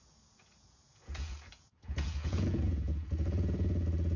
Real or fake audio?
fake